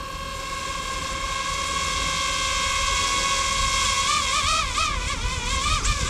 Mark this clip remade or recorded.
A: recorded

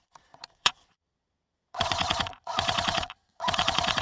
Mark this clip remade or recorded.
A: remade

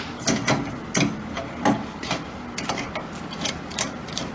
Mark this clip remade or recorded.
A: recorded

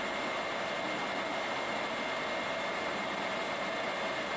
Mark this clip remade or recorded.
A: recorded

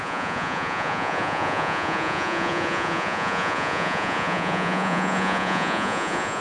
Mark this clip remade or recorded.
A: remade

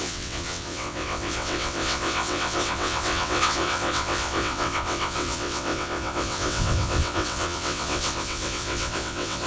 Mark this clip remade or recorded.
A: remade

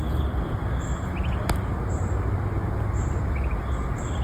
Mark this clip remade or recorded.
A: recorded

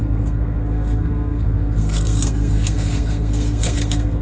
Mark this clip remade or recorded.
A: remade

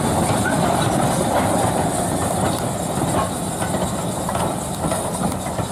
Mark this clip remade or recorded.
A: recorded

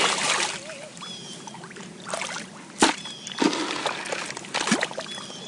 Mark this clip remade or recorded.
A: recorded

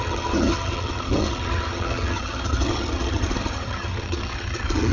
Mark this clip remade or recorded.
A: remade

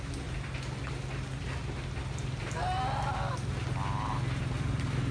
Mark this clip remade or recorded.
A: recorded